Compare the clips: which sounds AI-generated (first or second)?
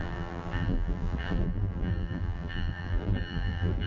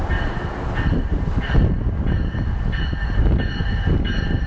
first